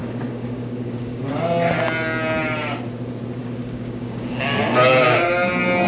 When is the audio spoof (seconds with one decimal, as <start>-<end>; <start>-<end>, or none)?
0.0-1.3; 3.4-4.6